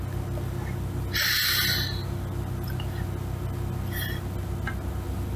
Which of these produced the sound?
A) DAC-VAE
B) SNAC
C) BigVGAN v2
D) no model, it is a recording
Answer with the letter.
D